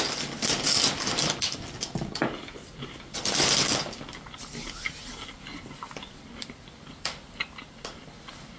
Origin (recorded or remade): recorded